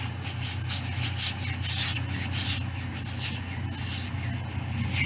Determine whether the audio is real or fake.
real